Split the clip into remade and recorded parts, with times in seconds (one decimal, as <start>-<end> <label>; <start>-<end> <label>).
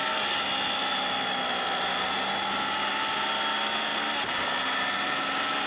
0.0-5.7 recorded